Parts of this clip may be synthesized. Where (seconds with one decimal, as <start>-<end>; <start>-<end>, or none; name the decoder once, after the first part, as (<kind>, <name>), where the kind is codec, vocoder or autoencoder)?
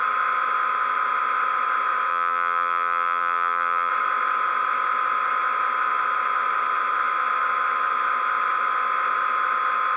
2.1-3.9 (vocoder, BigVGAN v2)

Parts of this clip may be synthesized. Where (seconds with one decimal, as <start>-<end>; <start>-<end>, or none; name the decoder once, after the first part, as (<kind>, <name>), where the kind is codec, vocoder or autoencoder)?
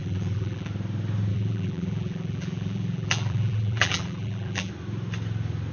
0.0-0.7 (vocoder, BigVGAN v2); 1.3-4.7